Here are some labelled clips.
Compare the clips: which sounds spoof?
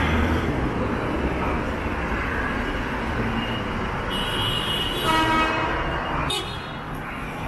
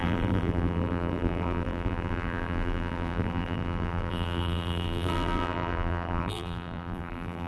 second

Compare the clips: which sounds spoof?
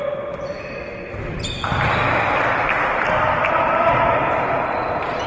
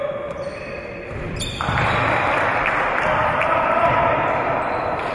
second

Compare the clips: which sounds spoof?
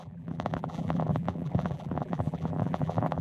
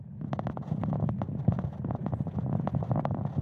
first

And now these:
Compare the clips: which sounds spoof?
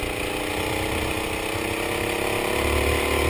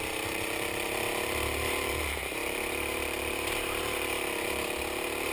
second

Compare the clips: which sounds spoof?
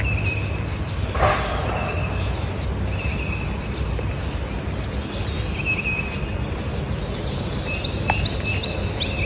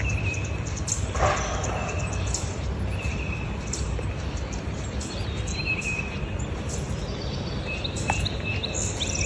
second